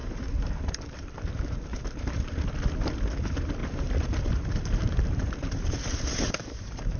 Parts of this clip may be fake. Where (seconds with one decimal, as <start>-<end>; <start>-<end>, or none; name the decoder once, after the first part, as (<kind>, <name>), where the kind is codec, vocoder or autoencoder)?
0.0-2.6 (vocoder, BigVGAN v2); 3.6-7.0